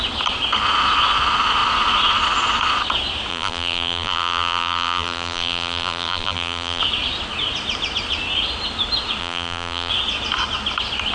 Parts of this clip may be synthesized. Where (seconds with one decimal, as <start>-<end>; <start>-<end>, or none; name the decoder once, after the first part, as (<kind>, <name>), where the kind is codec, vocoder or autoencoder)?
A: 3.3-6.8 (vocoder, BigVGAN v2); 9.2-9.9